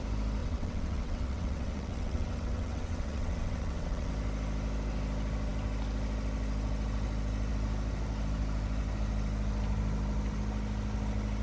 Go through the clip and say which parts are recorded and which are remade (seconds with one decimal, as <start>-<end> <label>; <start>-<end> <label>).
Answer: 0.0-0.4 recorded; 0.4-4.1 remade; 4.1-11.4 recorded